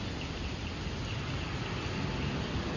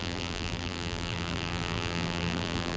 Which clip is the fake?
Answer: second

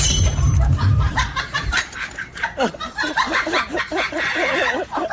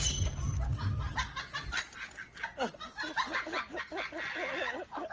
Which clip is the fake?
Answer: first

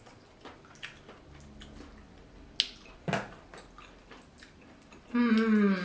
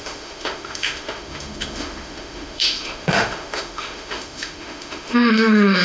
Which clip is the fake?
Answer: second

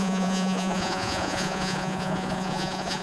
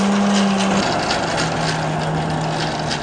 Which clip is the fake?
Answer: first